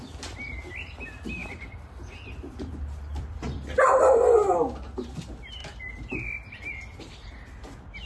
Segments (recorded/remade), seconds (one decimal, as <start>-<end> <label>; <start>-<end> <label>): 0.0-1.4 recorded; 1.4-4.2 remade; 4.2-5.6 recorded; 5.6-7.0 remade; 7.0-8.1 recorded